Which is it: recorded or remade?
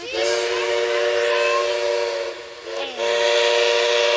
recorded